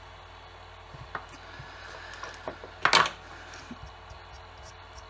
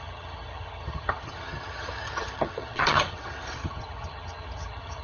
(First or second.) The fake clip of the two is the second